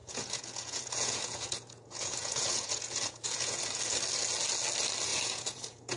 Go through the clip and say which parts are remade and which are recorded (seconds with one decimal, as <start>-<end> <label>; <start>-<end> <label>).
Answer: 0.0-3.6 remade; 3.6-5.1 recorded; 5.1-6.0 remade